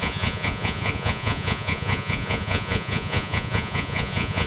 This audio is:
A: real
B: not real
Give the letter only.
B